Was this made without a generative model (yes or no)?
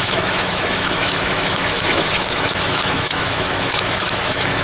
no